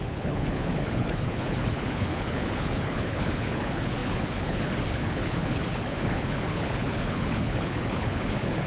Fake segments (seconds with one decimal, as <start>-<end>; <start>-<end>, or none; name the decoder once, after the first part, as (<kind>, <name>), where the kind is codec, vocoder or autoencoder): 0.0-8.7 (codec, HILCodec)